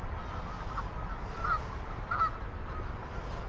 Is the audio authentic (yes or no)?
yes